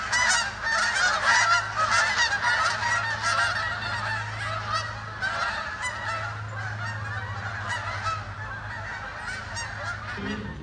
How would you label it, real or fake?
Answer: real